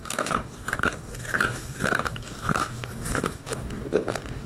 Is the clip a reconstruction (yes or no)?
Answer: yes